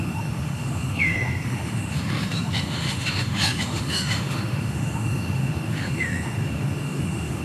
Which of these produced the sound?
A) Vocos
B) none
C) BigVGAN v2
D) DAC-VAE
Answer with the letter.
D